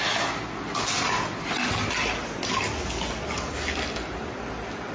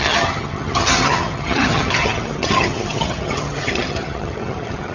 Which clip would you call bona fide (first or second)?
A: first